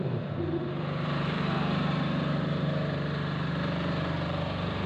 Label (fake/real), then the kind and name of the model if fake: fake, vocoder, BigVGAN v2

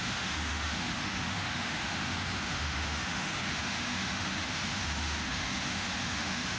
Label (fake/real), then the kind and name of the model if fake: fake, autoencoder, DAC-VAE